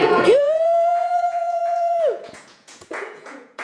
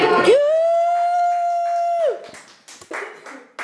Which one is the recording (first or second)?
second